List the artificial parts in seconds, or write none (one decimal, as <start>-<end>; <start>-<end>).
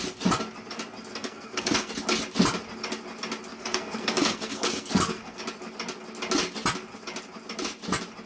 1.1-1.9; 3.5-5.4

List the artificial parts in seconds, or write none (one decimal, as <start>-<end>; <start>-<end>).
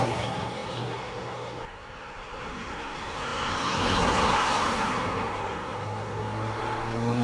0.0-7.2